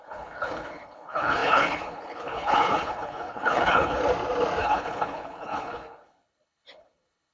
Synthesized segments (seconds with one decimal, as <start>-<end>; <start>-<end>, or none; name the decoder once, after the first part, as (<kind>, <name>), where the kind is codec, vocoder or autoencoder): 0.0-4.0 (codec, HILCodec); 4.6-7.3